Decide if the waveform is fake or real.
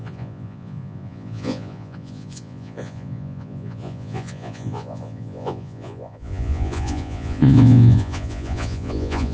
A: fake